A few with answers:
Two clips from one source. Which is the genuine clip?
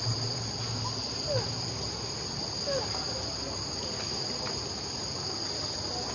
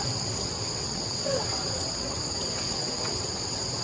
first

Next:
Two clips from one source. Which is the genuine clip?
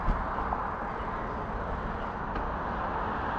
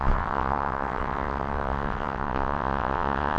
first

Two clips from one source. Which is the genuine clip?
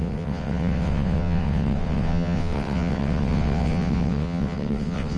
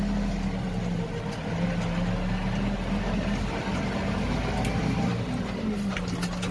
second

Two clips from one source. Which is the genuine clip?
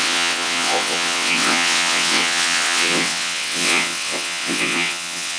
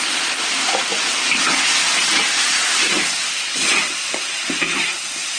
second